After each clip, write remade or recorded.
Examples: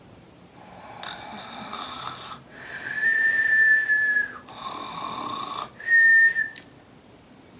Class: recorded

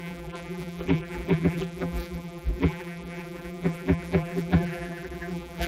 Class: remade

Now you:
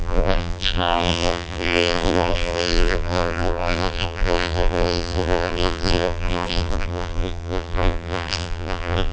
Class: remade